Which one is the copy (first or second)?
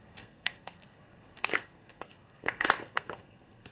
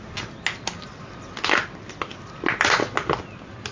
first